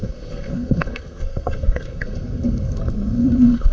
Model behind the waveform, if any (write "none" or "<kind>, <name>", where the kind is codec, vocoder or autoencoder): codec, SNAC